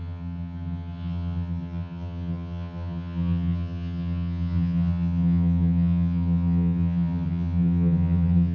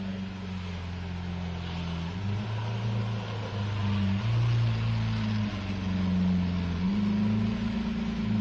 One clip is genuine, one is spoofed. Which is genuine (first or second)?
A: second